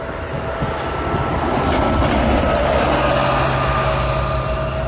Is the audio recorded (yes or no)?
yes